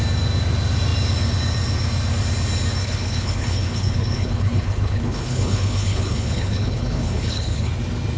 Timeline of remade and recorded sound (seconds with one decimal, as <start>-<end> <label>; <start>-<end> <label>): 0.0-2.8 recorded; 2.8-7.7 remade; 7.7-8.2 recorded